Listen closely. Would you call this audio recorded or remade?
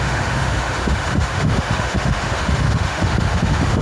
remade